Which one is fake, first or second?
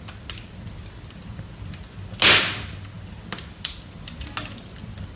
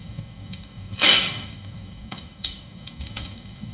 second